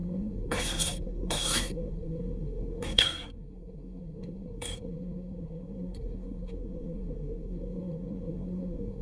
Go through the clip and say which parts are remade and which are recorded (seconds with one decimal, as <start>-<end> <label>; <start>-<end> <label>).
0.0-9.0 remade